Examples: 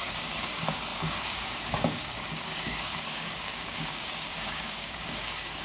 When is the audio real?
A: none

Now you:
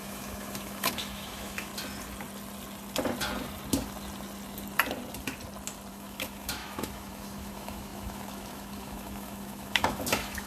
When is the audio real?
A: 1.7-5.9

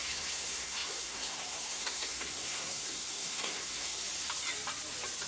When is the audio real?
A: 4.0-5.3

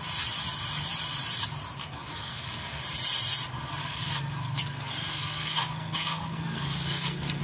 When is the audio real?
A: 0.0-1.8; 2.8-3.8

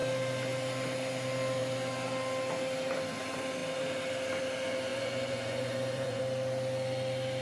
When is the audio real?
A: 0.0-4.9; 6.2-7.4